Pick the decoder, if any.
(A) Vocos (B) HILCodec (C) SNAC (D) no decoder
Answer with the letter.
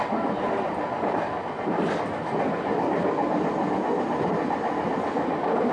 D